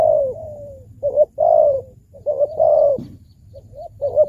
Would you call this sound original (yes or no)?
no